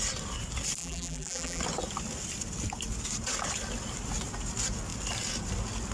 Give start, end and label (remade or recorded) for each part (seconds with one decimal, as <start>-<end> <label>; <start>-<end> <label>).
0.0-0.8 recorded; 0.8-1.6 remade; 1.6-5.9 recorded